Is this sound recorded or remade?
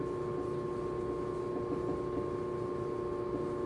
recorded